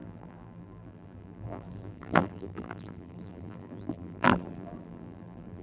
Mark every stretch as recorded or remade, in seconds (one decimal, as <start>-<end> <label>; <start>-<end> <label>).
0.0-5.6 remade